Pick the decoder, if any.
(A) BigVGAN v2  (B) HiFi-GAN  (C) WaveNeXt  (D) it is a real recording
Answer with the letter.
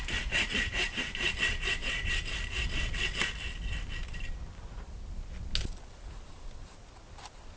D